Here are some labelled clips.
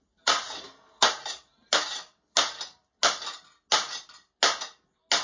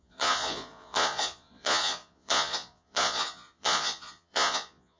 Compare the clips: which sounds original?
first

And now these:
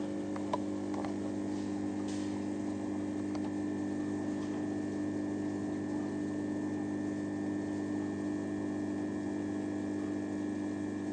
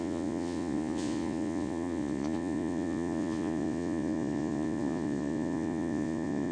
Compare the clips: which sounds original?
first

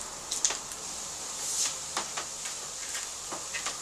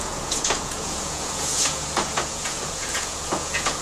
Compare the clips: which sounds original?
first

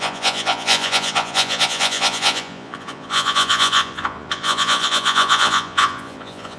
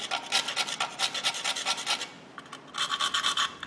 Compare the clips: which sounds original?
second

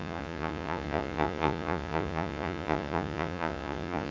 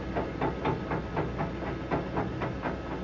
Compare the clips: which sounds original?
second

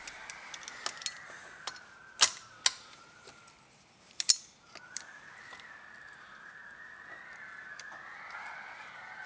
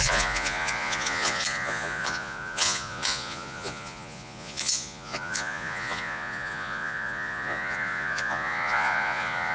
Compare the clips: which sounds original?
first